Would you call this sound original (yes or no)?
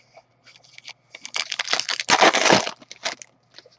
yes